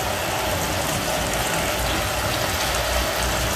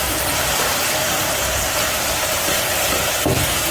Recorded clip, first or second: first